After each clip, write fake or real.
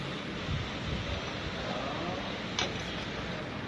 real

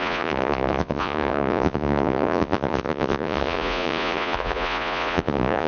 fake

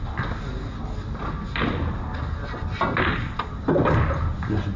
real